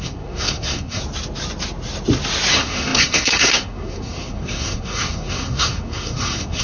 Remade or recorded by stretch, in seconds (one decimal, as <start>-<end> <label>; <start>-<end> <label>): 0.0-1.0 remade; 1.0-2.5 recorded; 2.5-6.6 remade